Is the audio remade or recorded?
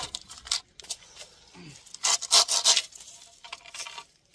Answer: recorded